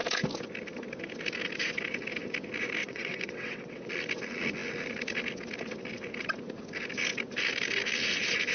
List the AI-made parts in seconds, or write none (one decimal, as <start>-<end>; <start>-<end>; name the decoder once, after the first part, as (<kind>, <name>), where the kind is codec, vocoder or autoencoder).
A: 2.8-3.9 (vocoder, WaveNeXt)